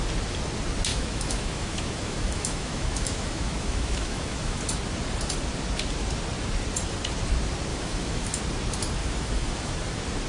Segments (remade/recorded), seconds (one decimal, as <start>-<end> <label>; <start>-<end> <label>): 0.0-0.9 recorded; 0.9-4.6 remade; 4.6-7.7 recorded; 7.7-8.4 remade; 8.4-9.0 recorded; 9.0-9.7 remade; 9.7-10.3 recorded